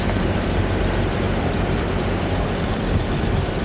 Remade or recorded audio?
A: remade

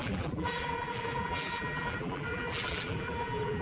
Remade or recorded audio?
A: remade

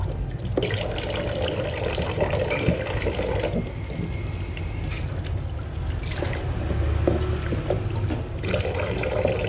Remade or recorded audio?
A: recorded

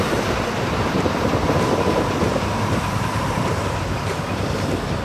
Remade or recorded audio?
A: remade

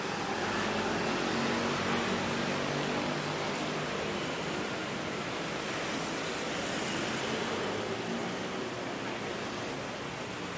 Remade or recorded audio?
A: recorded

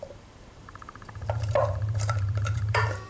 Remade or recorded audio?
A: remade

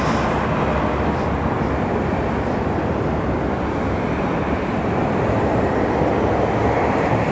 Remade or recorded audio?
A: recorded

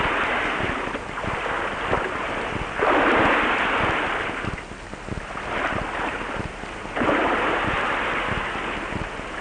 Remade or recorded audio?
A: recorded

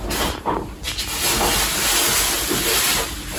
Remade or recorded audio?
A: recorded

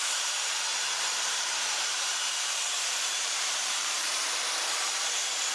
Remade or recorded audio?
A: remade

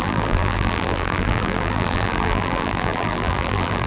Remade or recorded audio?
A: remade